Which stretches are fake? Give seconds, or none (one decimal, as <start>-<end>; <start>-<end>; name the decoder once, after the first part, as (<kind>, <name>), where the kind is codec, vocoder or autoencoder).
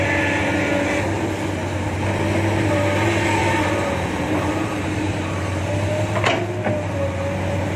3.4-5.5 (vocoder, BigVGAN v2)